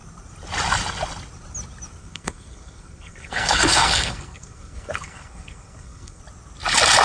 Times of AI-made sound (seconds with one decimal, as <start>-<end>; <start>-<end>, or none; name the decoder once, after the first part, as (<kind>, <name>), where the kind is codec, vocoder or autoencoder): 2.0-6.2 (codec, SNAC)